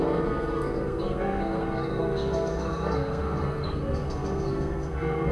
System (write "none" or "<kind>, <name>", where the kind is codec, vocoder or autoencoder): codec, SNAC